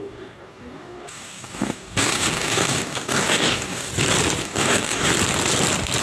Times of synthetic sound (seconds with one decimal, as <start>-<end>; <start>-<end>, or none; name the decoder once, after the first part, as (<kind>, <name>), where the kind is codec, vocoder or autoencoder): 0.0-3.9 (codec, DAC); 4.4-5.1